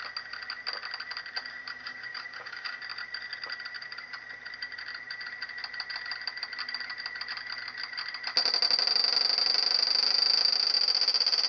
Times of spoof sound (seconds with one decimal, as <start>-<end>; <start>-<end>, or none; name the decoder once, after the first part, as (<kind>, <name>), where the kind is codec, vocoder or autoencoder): 1.5-2.8 (codec, DAC)